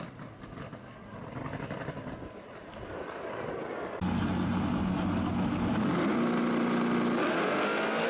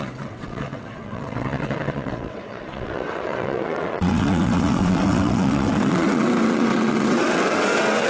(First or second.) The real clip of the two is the first